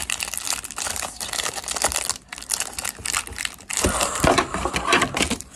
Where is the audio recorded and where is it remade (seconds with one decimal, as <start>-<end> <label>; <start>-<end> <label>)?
0.0-5.6 recorded